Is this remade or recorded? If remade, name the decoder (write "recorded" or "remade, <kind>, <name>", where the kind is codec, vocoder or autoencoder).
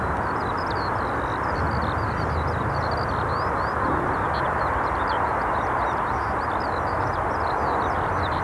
recorded